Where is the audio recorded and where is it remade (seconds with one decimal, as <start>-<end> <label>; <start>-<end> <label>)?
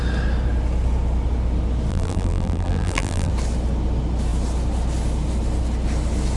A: 0.0-1.9 recorded; 1.9-3.3 remade; 3.3-6.4 recorded